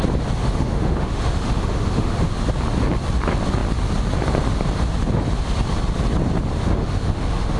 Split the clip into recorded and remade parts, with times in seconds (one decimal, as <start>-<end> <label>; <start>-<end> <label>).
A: 0.0-0.4 recorded; 0.4-2.3 remade; 2.3-6.6 recorded; 6.6-7.6 remade